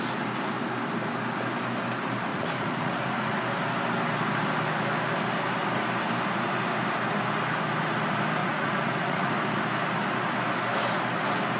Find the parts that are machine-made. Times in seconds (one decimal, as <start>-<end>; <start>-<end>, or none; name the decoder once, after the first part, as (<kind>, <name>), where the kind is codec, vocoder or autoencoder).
2.3-3.3 (vocoder, Vocos); 8.4-9.3